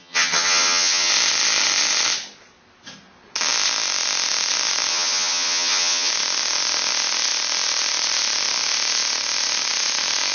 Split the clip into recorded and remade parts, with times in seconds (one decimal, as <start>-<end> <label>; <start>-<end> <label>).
0.0-1.1 remade; 1.1-4.9 recorded; 4.9-6.1 remade; 6.1-10.3 recorded